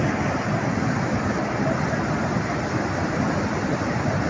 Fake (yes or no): no